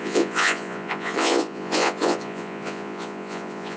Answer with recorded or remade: remade